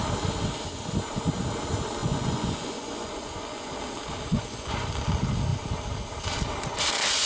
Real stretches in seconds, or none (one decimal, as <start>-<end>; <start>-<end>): 0.0-2.0; 3.7-4.3; 4.9-7.3